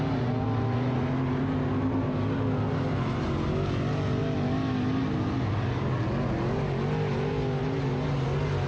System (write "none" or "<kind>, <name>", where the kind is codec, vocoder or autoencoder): none